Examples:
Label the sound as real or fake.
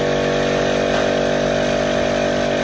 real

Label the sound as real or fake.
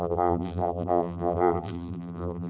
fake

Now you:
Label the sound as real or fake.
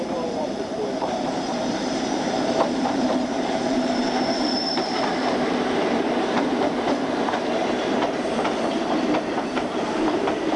fake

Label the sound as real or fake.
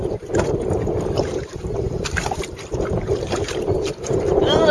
fake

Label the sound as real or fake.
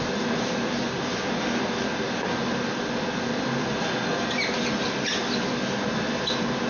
fake